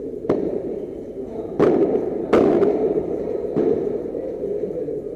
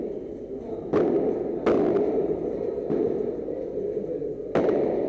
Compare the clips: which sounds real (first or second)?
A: second